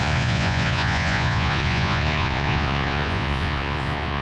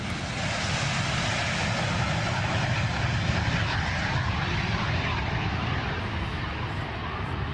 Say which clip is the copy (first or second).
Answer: first